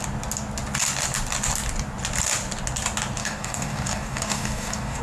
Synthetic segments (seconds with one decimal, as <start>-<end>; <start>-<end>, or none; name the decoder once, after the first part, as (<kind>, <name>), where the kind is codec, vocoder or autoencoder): 3.2-5.0 (codec, DAC)

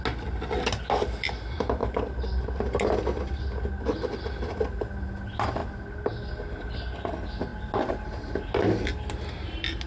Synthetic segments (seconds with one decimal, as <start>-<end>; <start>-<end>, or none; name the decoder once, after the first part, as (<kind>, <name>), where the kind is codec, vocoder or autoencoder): none

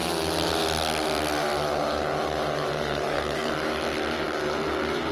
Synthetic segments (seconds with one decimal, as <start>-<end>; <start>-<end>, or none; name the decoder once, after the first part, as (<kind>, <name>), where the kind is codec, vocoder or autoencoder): 2.7-3.5 (codec, SNAC)

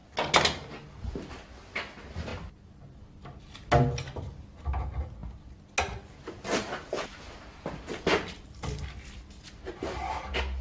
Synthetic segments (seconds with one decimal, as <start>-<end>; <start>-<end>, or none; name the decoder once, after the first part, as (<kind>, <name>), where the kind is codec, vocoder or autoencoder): none

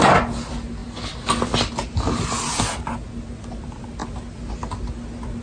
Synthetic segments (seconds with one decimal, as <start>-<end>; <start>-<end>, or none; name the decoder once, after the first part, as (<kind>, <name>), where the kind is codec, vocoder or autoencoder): none

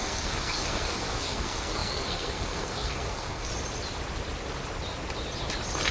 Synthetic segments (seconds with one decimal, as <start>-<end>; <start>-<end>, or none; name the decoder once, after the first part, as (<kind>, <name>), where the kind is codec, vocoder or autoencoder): 0.0-3.5 (codec, SNAC)

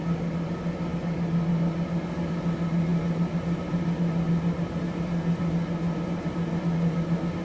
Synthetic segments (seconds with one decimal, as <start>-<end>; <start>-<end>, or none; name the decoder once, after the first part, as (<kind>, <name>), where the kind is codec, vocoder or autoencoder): none

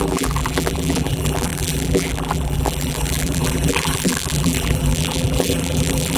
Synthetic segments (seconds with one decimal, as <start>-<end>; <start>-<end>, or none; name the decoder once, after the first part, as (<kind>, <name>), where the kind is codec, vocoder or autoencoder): 0.0-6.2 (vocoder, BigVGAN v2)